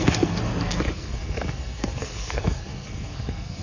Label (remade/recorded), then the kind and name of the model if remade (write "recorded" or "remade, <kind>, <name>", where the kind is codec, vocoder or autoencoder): remade, codec, SNAC